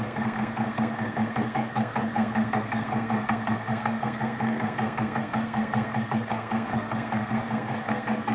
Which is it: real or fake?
fake